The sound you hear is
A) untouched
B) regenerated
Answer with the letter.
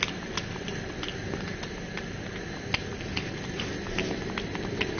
A